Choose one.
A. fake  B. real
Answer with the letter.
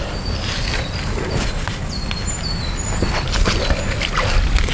B